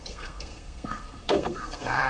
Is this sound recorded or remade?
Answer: remade